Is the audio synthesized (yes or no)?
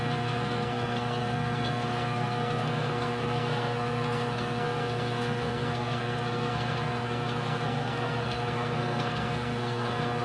yes